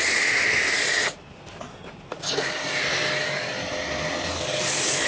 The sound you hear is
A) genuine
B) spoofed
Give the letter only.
A